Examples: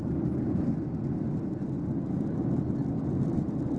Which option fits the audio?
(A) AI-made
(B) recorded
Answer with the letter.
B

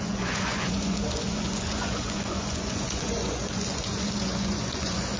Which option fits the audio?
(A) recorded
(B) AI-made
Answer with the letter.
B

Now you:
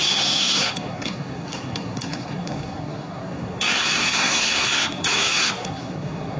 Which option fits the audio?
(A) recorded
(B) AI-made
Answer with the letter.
B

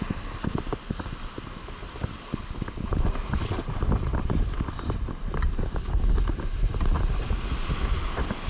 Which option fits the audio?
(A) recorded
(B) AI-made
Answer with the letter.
A